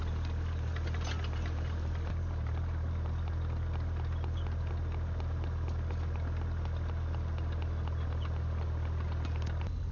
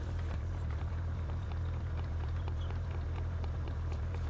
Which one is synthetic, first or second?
second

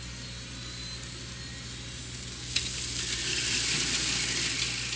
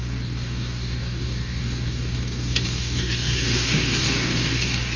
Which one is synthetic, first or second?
second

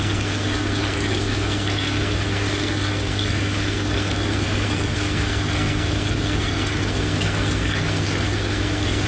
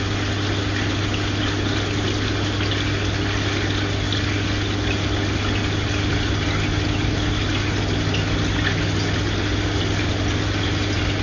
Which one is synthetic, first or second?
first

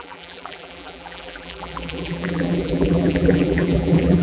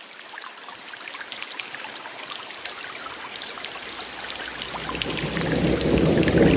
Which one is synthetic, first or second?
first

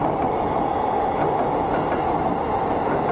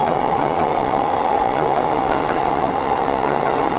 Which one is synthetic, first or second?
second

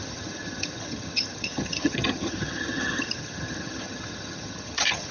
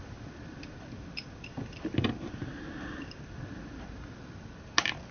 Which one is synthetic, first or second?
first